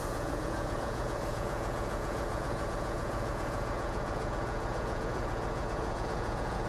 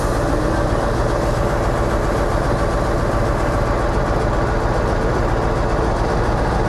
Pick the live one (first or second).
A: second